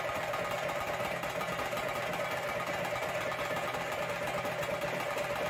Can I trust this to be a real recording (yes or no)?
yes